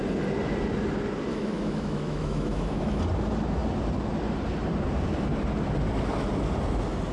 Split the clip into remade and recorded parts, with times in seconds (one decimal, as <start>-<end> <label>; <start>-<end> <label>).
0.0-1.3 recorded; 1.3-3.0 remade; 3.0-7.1 recorded